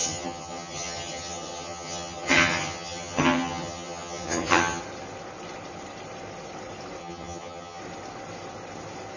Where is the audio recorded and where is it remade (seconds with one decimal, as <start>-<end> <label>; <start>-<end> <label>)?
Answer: 0.0-4.8 remade; 4.8-7.0 recorded; 7.0-7.8 remade; 7.8-9.2 recorded